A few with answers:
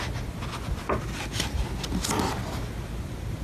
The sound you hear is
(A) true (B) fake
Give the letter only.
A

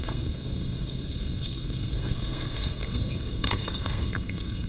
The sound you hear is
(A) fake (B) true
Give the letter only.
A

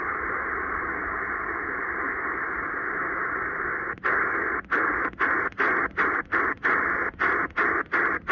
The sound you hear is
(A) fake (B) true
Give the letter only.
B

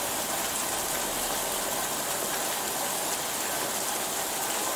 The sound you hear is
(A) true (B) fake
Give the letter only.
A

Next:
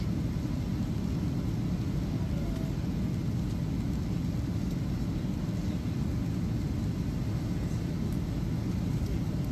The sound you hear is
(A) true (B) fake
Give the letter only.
A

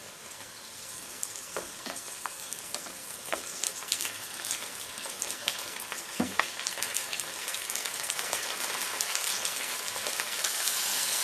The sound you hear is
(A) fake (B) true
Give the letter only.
A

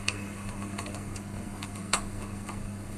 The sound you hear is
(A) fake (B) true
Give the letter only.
A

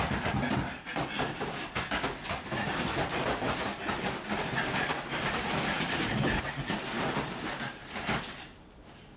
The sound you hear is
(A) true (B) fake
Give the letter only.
A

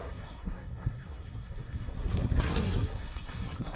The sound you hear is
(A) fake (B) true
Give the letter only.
A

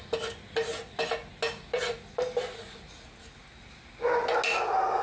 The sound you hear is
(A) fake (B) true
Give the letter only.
B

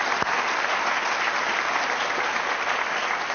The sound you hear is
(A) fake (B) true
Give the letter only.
B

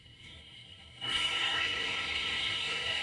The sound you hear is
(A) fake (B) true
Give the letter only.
A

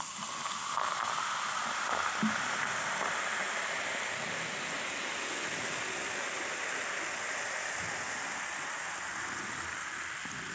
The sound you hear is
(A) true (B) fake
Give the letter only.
A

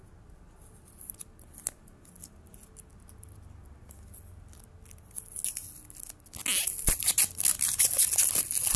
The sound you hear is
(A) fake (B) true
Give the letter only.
B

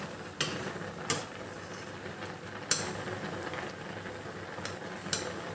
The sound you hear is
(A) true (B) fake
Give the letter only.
A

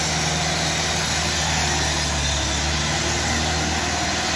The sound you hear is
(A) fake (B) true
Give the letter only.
B